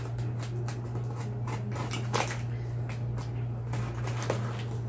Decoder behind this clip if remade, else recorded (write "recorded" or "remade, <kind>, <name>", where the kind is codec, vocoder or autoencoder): recorded